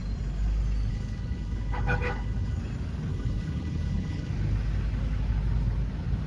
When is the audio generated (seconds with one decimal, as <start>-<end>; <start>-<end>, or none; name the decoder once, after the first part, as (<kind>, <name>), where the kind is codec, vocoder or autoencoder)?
0.9-2.6 (codec, HILCodec); 3.1-4.3